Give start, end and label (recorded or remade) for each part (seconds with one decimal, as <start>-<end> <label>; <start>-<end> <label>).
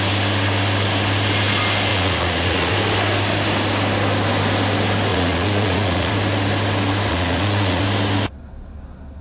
0.0-1.9 recorded; 1.9-2.7 remade; 2.7-5.1 recorded; 5.1-6.1 remade; 6.1-7.1 recorded; 7.1-7.8 remade; 7.8-9.2 recorded